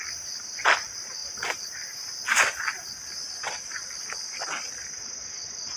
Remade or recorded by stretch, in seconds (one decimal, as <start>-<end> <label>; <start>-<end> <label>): 0.0-5.8 recorded